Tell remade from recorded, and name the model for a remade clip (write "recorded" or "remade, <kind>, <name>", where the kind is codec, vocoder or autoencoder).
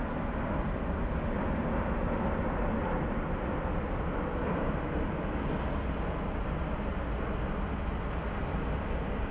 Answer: recorded